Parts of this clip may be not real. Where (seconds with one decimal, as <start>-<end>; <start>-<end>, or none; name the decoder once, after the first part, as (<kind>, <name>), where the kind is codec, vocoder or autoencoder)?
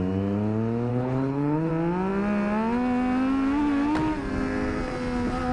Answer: 0.9-1.7 (codec, HILCodec)